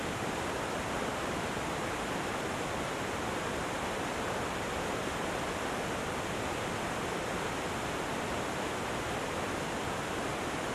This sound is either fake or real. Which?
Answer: real